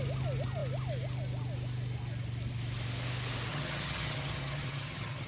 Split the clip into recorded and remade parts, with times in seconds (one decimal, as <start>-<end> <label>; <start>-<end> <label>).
0.0-3.5 recorded; 3.5-5.3 remade